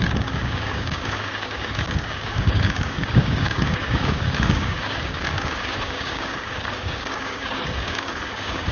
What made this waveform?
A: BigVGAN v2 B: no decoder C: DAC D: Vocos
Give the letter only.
C